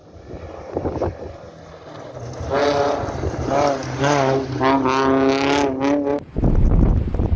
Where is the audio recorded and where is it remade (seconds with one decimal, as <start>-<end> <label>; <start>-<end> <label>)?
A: 0.0-7.4 recorded